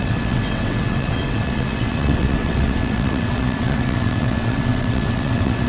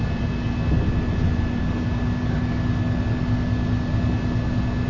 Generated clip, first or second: first